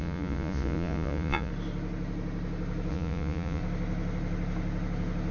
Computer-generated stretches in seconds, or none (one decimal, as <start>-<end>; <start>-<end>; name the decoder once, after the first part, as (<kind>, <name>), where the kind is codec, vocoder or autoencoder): 0.0-1.5 (vocoder, Vocos); 2.9-3.6